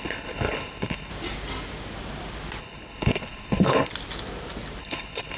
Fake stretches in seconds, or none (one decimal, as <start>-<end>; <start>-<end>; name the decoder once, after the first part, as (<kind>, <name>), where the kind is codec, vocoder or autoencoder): 0.0-1.1 (codec, HILCodec); 2.6-3.9; 4.8-5.4